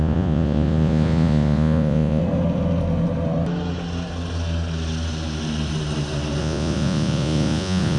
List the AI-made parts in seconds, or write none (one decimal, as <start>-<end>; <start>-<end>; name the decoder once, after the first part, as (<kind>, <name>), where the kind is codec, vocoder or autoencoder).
0.0-2.2 (vocoder, Vocos); 6.4-8.0